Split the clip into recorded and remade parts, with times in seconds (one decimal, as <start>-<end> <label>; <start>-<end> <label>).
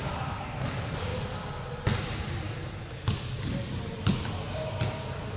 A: 0.0-1.1 remade; 1.1-4.3 recorded; 4.3-5.4 remade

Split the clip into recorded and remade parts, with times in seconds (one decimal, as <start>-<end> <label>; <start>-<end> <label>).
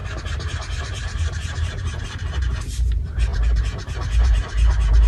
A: 0.0-5.1 remade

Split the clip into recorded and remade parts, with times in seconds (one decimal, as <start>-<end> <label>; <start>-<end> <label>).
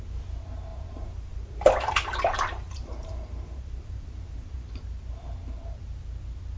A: 0.0-0.7 recorded; 0.7-4.7 remade; 4.7-6.6 recorded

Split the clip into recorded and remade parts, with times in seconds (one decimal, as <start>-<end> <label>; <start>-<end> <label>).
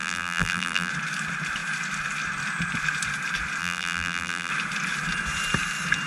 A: 0.0-0.9 remade; 0.9-3.6 recorded; 3.6-4.5 remade; 4.5-6.1 recorded